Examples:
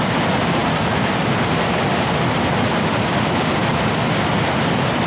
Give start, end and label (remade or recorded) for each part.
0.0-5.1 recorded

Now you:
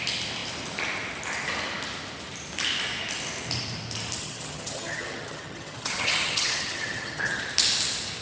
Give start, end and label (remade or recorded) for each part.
0.0-4.2 recorded; 4.2-7.4 remade; 7.4-8.2 recorded